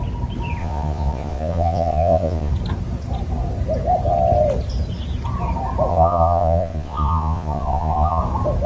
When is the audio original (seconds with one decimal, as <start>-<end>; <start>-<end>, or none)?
0.0-0.6; 2.5-5.9; 8.2-8.7